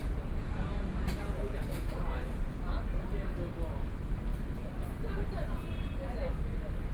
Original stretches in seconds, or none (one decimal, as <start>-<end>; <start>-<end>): 0.6-1.6; 2.5-4.3; 4.9-6.9